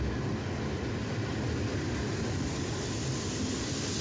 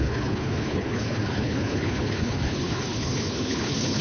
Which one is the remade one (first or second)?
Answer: second